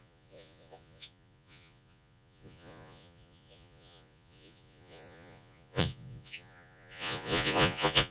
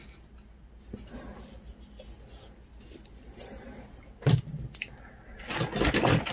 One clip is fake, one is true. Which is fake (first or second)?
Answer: first